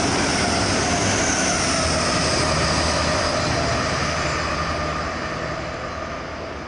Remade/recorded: recorded